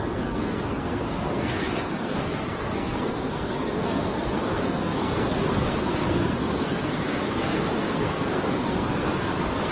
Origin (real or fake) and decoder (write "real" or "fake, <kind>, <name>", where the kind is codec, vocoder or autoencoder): fake, codec, SNAC